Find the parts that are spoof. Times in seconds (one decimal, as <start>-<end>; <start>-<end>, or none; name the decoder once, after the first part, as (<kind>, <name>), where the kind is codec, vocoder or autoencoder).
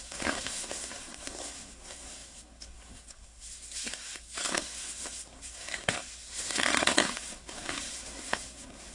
0.0-8.9 (codec, SNAC)